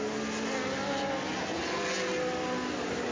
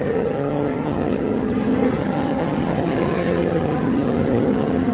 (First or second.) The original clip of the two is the first